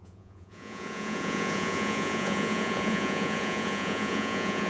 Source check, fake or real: fake